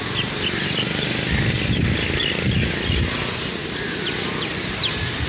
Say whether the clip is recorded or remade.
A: recorded